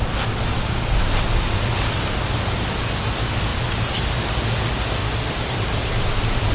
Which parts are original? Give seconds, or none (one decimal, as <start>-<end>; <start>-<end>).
0.0-0.5; 1.1-3.5; 4.1-5.0